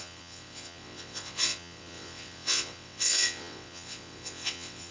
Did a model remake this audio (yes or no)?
yes